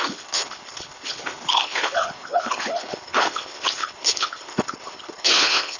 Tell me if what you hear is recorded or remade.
remade